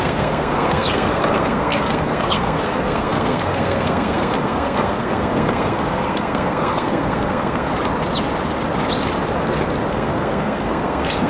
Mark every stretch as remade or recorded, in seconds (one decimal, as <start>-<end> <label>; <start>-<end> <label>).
0.0-7.7 remade; 7.7-9.9 recorded; 9.9-11.3 remade